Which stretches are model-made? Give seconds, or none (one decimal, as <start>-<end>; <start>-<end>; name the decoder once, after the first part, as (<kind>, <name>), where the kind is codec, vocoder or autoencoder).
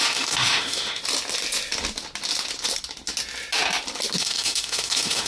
0.0-1.0 (autoencoder, DAC-VAE); 4.2-5.3